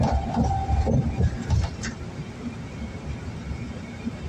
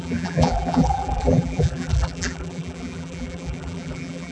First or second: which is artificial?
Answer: second